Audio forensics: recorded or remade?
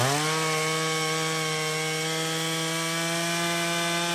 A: recorded